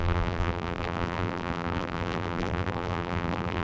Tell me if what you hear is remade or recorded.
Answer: remade